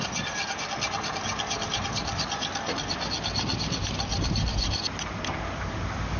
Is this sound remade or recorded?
recorded